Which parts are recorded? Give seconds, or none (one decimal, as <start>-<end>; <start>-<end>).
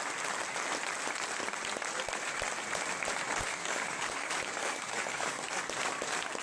0.0-3.5; 5.6-6.4